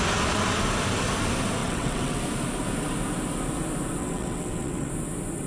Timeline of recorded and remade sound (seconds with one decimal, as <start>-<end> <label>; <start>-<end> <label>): 0.0-1.6 recorded; 1.6-2.2 remade; 2.2-4.0 recorded; 4.0-4.9 remade; 4.9-5.5 recorded